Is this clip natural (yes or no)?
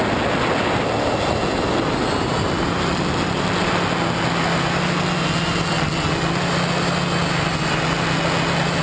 yes